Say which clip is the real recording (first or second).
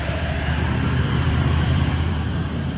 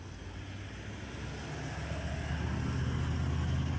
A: second